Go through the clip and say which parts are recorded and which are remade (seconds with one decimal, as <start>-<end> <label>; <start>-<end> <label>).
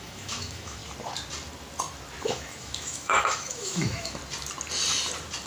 0.0-0.8 remade; 0.8-2.2 recorded; 2.2-4.2 remade; 4.2-5.5 recorded